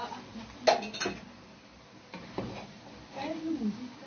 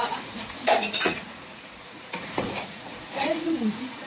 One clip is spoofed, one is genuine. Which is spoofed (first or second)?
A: second